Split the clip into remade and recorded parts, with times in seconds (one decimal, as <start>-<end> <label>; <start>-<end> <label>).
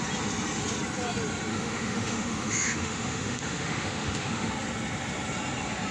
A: 0.0-1.5 recorded; 1.5-4.5 remade; 4.5-5.9 recorded